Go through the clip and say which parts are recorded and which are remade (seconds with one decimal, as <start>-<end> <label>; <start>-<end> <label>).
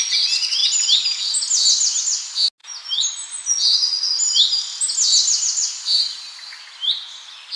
0.0-7.6 recorded